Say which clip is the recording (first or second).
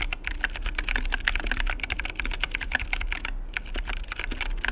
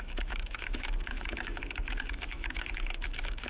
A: first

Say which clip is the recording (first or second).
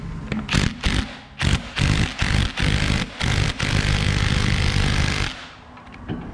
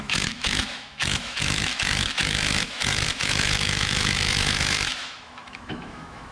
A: first